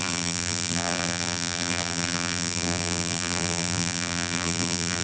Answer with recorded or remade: remade